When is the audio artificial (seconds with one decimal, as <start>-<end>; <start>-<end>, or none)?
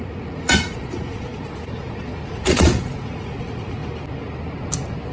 0.0-3.8